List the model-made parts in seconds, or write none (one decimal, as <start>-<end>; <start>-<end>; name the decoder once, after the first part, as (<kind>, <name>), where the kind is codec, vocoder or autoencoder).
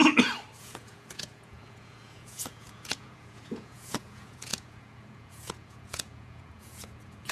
0.6-7.3 (vocoder, Vocos)